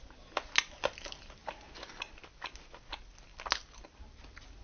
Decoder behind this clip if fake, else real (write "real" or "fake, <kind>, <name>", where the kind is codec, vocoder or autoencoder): real